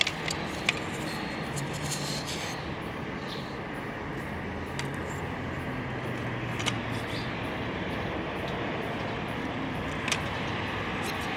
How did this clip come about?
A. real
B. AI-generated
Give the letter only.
A